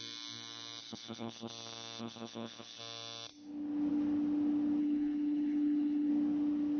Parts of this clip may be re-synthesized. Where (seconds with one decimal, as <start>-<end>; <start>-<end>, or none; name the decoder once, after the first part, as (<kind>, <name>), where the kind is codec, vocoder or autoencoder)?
0.8-1.5 (codec, HILCodec); 2.0-2.8; 4.8-6.1